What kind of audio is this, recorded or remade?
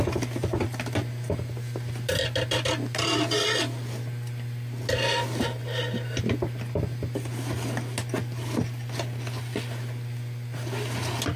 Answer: recorded